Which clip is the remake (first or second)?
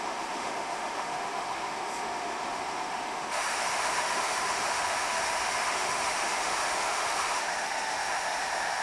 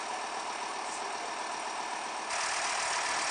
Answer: first